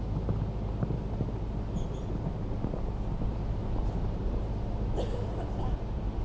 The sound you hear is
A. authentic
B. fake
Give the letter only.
A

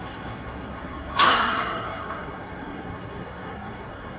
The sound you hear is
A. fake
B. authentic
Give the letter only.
A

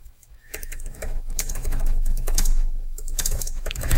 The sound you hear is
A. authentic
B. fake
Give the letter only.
B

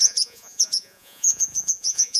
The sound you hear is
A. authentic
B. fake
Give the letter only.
B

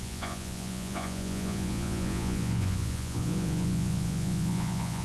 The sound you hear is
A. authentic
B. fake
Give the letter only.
B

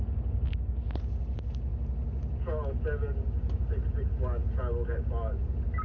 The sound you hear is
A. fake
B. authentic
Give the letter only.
B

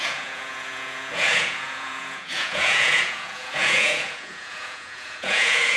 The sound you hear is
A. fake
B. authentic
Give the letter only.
A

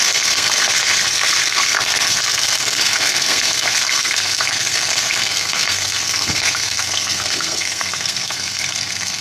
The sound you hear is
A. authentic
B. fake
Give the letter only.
B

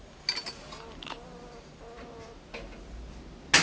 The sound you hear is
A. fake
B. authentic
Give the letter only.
B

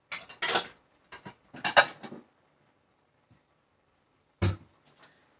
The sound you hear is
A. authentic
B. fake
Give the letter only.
A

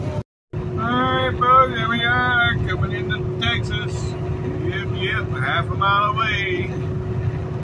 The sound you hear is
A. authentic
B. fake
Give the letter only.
A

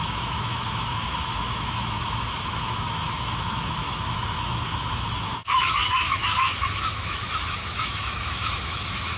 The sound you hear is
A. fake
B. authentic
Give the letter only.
A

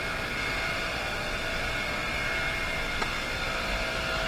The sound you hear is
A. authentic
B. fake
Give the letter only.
A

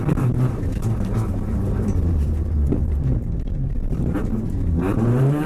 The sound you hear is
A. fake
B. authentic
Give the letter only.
A